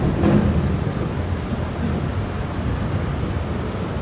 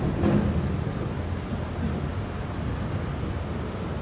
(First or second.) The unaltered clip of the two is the second